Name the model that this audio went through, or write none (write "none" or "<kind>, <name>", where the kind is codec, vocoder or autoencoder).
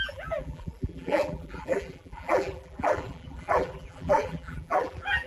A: vocoder, BigVGAN v2